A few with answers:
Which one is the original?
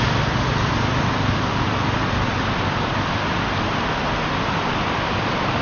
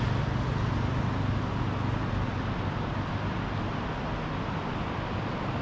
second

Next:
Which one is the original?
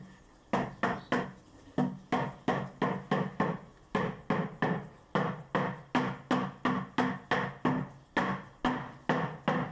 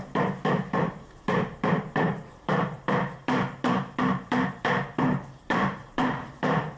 first